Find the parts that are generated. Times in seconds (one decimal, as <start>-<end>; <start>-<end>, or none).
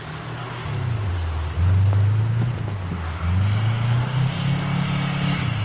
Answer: none